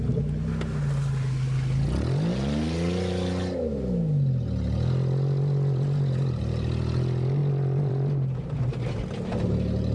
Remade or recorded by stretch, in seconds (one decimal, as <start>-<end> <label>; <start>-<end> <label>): 0.0-9.9 recorded

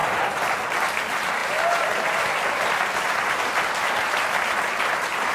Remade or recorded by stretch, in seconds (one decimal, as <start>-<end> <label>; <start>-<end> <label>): 0.0-5.3 recorded

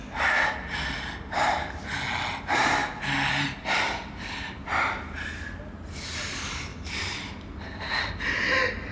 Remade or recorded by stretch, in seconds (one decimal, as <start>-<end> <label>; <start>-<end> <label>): 0.0-6.7 recorded; 6.7-7.3 remade; 7.3-8.9 recorded